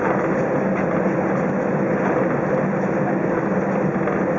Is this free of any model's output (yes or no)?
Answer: yes